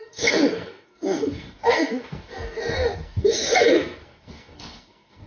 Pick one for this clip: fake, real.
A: fake